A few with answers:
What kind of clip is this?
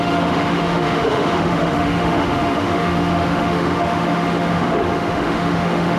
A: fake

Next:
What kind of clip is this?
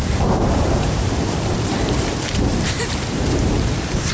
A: fake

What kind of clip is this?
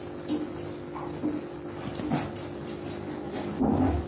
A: real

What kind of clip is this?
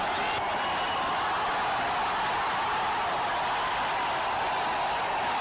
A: real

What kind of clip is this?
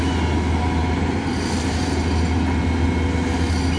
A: real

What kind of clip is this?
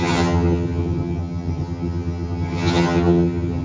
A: fake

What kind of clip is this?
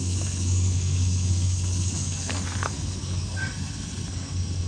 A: fake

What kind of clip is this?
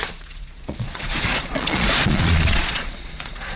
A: fake